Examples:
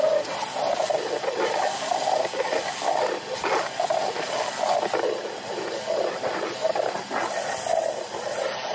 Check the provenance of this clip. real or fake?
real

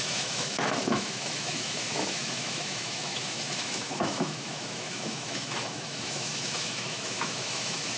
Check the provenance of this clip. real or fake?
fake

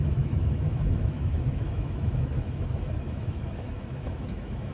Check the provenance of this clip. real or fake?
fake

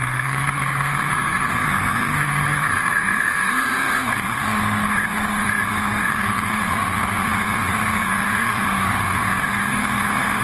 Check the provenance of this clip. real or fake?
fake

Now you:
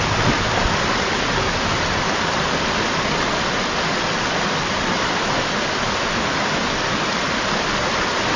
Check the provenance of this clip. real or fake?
real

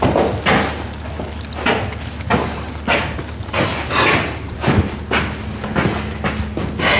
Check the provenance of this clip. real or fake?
real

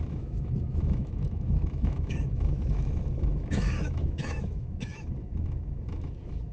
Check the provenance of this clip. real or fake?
fake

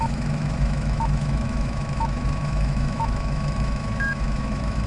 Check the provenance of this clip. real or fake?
fake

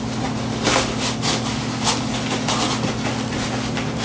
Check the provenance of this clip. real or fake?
real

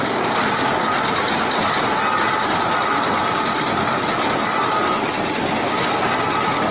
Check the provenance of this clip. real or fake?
real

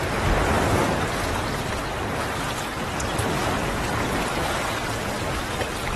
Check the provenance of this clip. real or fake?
real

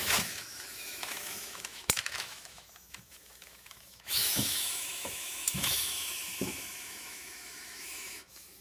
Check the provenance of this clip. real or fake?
fake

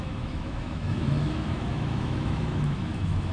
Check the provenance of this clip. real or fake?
fake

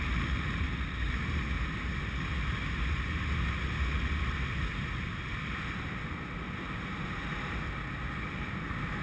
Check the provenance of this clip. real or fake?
real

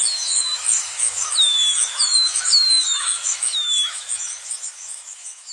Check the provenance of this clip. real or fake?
fake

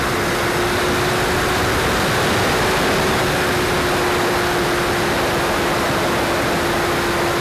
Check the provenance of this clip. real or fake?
real